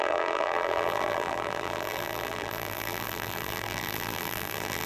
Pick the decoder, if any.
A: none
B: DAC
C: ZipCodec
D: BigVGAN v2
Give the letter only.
D